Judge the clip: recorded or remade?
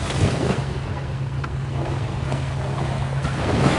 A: remade